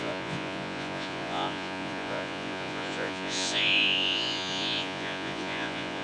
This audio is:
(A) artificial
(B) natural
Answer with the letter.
A